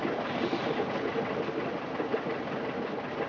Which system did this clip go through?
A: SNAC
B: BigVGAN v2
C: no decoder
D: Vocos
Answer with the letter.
C